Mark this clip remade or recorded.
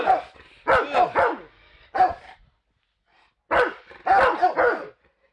recorded